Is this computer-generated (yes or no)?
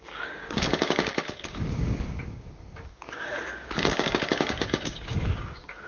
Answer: yes